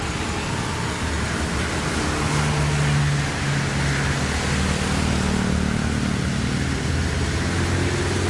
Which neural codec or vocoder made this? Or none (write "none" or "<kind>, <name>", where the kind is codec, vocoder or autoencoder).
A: none